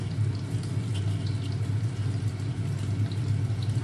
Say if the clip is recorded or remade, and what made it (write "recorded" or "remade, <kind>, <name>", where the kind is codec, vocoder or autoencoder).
recorded